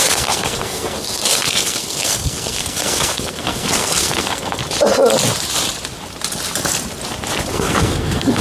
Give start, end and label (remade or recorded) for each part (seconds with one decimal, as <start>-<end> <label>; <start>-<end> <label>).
0.0-4.6 remade; 4.6-7.5 recorded; 7.5-8.4 remade